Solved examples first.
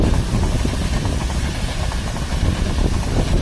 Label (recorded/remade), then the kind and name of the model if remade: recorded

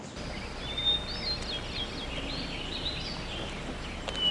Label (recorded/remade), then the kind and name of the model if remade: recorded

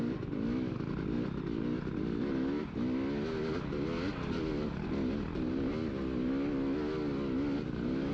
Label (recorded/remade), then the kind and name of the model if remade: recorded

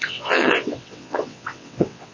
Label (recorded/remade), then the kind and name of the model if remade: remade, vocoder, WaveNeXt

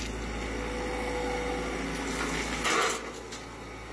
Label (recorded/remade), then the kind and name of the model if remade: recorded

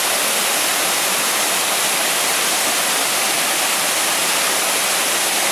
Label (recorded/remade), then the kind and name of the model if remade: recorded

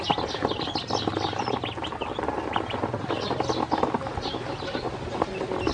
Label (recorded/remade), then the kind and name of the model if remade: recorded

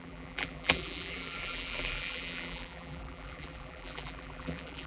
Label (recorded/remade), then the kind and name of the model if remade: remade, vocoder, BigVGAN v2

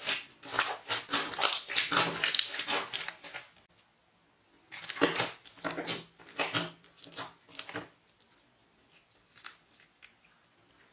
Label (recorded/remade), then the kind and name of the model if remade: recorded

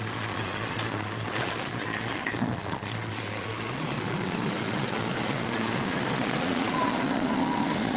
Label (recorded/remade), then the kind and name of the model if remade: remade, vocoder, Vocos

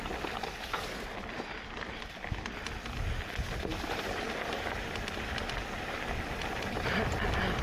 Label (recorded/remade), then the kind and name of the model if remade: recorded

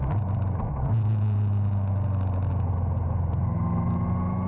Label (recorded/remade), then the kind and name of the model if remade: recorded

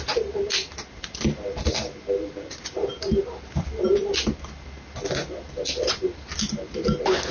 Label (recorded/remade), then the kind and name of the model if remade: recorded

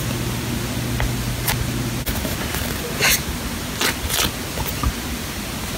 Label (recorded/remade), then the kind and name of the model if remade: recorded